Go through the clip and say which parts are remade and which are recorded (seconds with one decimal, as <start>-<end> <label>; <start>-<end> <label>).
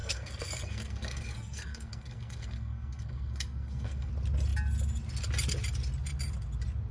0.0-4.1 remade; 4.1-6.9 recorded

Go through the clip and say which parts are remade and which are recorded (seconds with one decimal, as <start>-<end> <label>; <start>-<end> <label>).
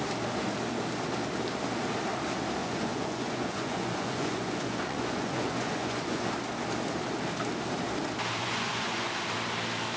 0.0-2.6 recorded; 2.6-6.3 remade; 6.3-8.4 recorded; 8.4-9.1 remade; 9.1-10.0 recorded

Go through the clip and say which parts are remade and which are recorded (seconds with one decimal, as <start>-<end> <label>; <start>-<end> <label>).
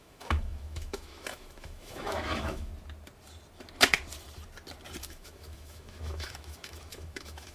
0.0-2.7 remade; 2.7-5.0 recorded; 5.0-7.5 remade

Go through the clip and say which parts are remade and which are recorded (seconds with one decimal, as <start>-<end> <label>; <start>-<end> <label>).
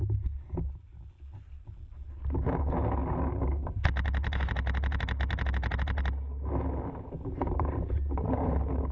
0.0-8.9 recorded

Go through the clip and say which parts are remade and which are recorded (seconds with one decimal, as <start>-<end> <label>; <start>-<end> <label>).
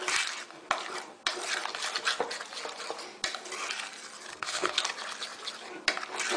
0.0-4.3 recorded; 4.3-4.8 remade; 4.8-6.4 recorded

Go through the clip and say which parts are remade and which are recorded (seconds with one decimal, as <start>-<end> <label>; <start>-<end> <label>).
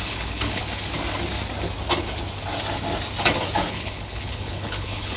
0.0-0.6 remade; 0.6-3.7 recorded; 3.7-5.2 remade